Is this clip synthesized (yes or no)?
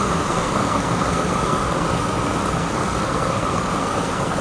yes